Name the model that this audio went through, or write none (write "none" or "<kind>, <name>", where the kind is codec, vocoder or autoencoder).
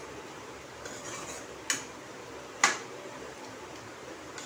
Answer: none